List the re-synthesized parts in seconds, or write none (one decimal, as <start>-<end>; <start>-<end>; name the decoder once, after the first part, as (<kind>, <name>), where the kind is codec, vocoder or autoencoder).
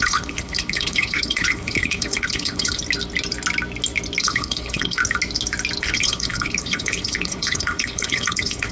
0.0-2.8 (codec, HILCodec); 4.2-5.0; 5.8-8.7